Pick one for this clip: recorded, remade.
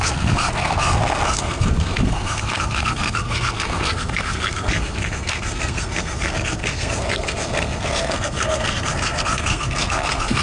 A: remade